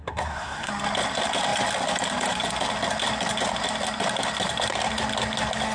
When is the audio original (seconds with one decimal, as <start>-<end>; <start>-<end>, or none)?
0.7-5.7